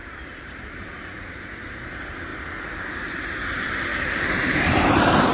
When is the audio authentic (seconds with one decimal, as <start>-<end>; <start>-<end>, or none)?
2.3-2.9